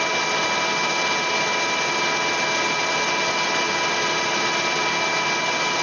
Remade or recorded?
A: recorded